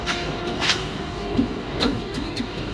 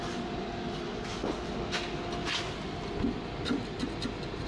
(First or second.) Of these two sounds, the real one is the second